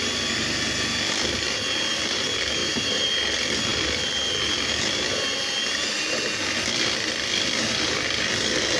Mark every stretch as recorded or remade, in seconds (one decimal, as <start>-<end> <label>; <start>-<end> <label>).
0.0-2.6 recorded; 2.6-3.1 remade; 3.1-3.7 recorded; 3.7-4.3 remade; 4.3-8.8 recorded